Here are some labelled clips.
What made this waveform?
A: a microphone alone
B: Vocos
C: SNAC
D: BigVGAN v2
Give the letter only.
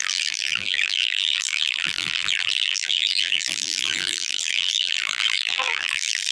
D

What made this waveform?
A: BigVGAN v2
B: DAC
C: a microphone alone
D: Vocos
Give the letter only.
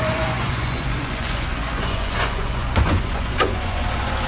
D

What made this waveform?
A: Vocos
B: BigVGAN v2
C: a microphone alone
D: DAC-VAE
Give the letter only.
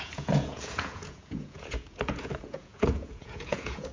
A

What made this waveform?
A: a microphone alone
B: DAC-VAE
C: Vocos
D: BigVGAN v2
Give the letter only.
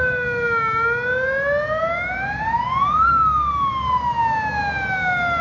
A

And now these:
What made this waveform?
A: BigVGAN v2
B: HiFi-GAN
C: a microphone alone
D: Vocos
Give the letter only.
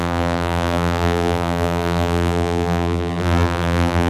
A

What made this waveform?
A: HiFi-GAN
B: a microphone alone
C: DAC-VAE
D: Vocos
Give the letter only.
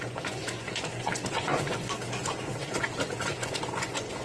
D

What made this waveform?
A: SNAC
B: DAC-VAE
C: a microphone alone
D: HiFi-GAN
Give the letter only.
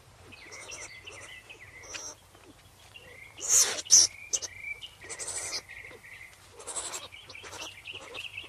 C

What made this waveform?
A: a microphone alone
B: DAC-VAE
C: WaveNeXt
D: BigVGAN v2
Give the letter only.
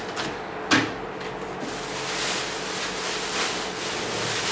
A